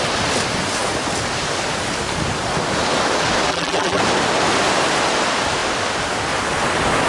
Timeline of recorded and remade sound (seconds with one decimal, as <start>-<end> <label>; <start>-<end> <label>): 0.0-3.5 recorded; 3.5-4.0 remade; 4.0-7.1 recorded